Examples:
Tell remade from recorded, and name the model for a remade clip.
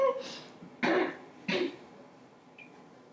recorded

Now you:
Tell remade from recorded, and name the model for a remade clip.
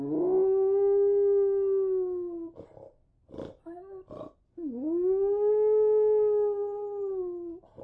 recorded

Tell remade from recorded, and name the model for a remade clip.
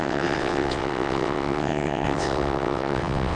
remade, vocoder, WaveNeXt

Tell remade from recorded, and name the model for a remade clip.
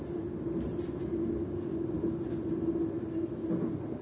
recorded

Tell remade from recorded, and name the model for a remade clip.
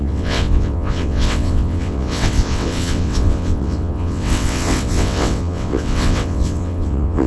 remade, vocoder, WaveNeXt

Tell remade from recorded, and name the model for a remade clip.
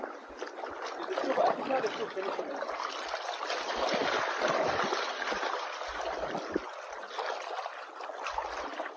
recorded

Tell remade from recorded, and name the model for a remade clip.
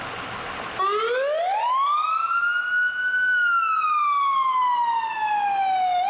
recorded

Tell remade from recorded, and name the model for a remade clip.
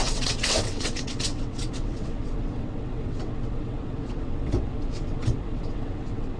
remade, vocoder, WaveNeXt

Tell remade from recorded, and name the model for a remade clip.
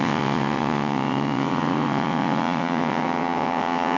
remade, vocoder, WaveNeXt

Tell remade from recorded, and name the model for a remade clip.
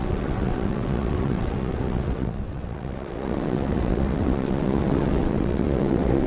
remade, vocoder, WaveNeXt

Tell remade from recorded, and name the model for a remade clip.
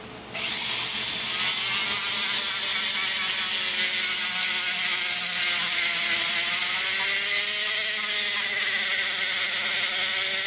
recorded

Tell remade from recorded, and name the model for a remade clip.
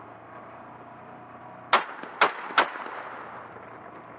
recorded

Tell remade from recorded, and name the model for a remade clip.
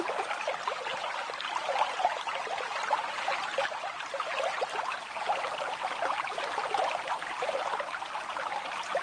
recorded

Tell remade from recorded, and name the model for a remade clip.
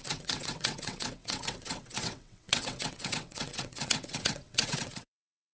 remade, vocoder, WaveNeXt